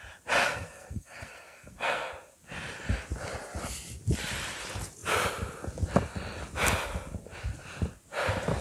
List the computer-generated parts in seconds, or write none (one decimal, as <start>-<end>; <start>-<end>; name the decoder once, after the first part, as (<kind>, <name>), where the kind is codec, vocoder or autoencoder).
0.4-2.1 (codec, SNAC)